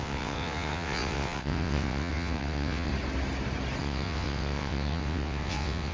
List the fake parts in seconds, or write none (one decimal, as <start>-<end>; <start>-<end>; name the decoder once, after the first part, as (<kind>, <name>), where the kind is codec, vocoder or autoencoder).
0.0-2.9 (vocoder, WaveNeXt); 3.8-5.9